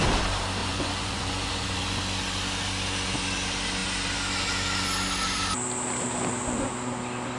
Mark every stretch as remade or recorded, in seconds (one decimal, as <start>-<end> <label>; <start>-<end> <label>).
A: 0.0-0.6 recorded; 0.6-2.0 remade; 2.0-7.4 recorded